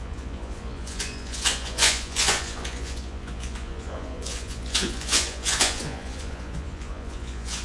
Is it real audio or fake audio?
fake